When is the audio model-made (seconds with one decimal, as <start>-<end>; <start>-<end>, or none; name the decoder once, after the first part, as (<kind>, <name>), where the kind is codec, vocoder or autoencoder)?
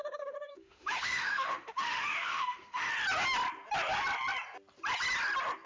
0.0-2.9 (autoencoder, DAC-VAE)